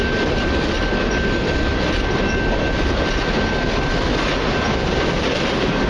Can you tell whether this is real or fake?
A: real